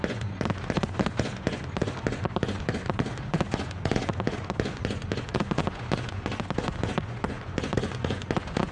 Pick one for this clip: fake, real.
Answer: fake